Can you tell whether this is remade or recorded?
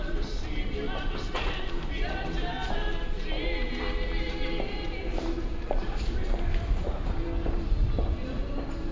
remade